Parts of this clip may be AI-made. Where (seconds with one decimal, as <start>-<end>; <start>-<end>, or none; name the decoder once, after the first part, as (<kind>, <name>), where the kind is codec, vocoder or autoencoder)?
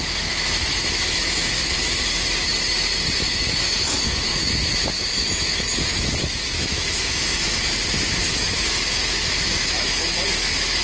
0.0-2.5 (autoencoder, DAC-VAE); 3.2-10.8